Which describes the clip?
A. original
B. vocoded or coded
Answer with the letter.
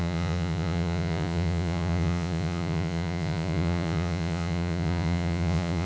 B